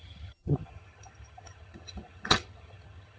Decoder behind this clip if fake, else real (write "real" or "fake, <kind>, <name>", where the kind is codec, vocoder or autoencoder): fake, vocoder, HiFi-GAN